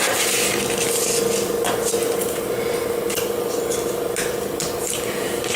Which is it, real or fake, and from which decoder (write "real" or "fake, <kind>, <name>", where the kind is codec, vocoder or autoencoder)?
real